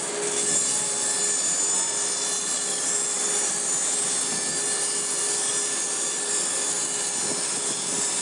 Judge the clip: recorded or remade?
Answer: recorded